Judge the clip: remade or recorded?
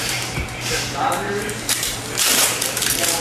remade